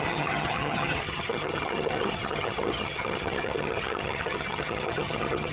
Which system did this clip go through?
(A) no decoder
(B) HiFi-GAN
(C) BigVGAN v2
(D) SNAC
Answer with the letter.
B